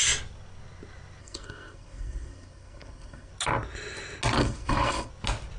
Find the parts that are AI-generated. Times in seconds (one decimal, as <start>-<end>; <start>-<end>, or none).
1.2-3.3; 4.4-5.1